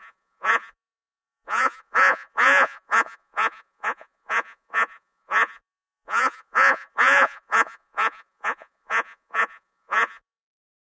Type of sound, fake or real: fake